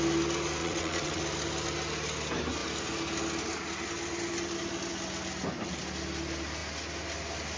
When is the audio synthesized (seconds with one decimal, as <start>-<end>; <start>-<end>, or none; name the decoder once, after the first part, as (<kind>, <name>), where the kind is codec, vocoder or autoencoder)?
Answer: 0.6-1.2 (vocoder, WaveNeXt)